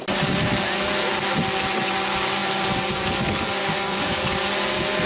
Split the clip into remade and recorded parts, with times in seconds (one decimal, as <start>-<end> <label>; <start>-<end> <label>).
0.0-3.6 recorded; 3.6-4.2 remade; 4.2-5.1 recorded